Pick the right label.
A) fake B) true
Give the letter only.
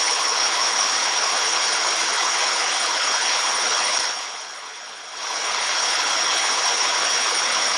A